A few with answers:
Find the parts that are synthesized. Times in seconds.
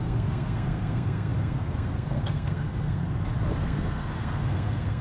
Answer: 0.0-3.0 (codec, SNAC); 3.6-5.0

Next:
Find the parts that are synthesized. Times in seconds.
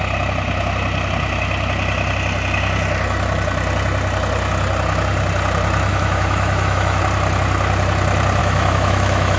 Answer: 5.9-7.0 (autoencoder, DAC-VAE); 8.4-9.4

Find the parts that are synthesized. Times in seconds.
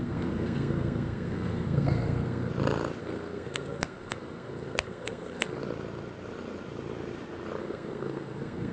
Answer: 0.0-2.5 (codec, SNAC); 3.0-5.6; 7.6-8.7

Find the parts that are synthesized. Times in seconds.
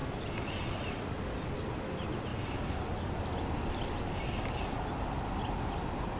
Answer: none